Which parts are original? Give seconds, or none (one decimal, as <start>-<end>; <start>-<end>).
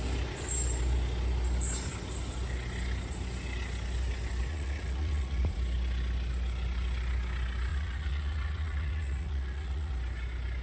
0.0-4.5; 5.4-7.7; 9.9-10.6